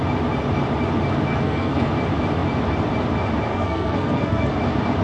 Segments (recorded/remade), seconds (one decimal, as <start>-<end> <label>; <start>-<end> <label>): 0.0-1.3 recorded; 1.3-1.9 remade; 1.9-3.5 recorded; 3.5-4.6 remade; 4.6-5.0 recorded